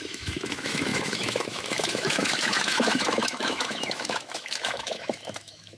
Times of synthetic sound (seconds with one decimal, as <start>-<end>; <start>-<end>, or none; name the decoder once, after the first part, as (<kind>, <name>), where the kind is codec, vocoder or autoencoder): 0.0-5.8 (autoencoder, DAC-VAE)

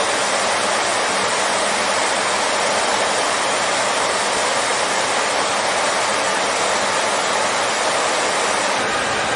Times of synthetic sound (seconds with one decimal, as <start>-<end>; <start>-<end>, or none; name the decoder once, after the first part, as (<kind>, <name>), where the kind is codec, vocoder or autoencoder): none

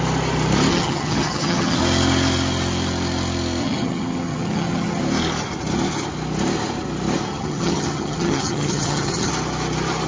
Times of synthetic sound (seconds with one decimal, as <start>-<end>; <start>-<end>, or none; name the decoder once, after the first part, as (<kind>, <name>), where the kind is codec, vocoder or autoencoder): 0.7-1.8 (vocoder, HiFi-GAN); 3.6-5.0; 7.3-9.3